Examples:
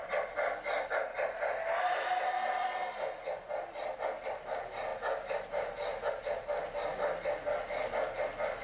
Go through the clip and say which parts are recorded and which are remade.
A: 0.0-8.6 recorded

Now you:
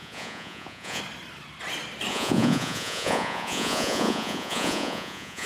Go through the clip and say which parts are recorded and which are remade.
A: 0.0-1.0 remade; 1.0-2.1 recorded; 2.1-5.5 remade

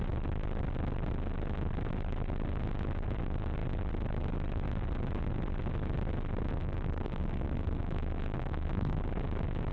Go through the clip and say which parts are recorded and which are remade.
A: 0.0-6.6 recorded; 6.6-9.0 remade; 9.0-9.7 recorded

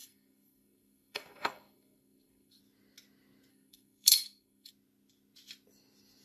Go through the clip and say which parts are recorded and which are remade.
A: 0.0-2.6 remade; 2.6-3.5 recorded; 3.5-4.7 remade; 4.7-6.2 recorded

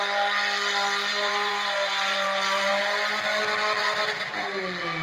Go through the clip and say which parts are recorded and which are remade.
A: 0.0-1.1 recorded; 1.1-2.7 remade; 2.7-3.8 recorded; 3.8-4.6 remade; 4.6-5.0 recorded

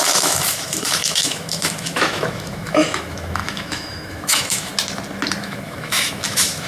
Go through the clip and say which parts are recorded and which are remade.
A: 0.0-4.7 remade; 4.7-5.4 recorded; 5.4-6.7 remade

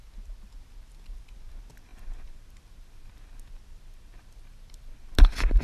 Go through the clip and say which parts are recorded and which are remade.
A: 0.0-5.6 recorded

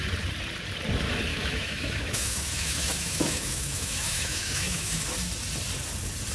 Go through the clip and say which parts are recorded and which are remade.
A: 0.0-1.3 recorded; 1.3-5.0 remade; 5.0-6.3 recorded